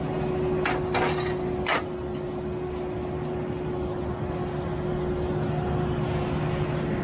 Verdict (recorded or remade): recorded